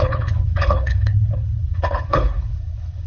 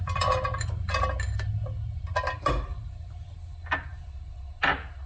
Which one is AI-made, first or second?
first